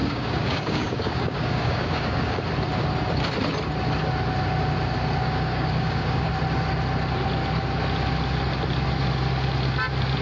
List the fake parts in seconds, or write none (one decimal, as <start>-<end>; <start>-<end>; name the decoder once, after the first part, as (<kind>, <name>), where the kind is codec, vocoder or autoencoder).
0.0-2.4 (codec, DAC); 5.2-6.3